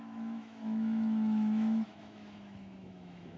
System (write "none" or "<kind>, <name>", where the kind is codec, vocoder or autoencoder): autoencoder, DAC-VAE